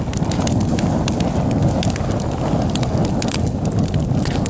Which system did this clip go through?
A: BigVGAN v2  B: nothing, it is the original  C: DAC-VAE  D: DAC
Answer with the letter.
B